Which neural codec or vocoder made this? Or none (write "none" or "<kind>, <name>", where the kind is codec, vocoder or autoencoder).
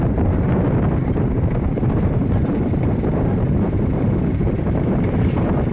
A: vocoder, BigVGAN v2